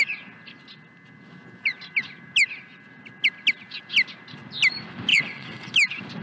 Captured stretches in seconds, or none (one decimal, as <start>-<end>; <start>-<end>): 0.0-5.1; 5.7-6.2